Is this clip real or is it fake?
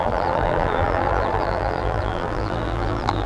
fake